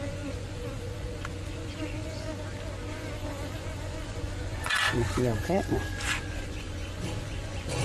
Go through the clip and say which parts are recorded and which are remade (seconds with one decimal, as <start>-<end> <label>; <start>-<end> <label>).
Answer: 0.0-2.3 remade; 2.3-2.9 recorded; 2.9-7.8 remade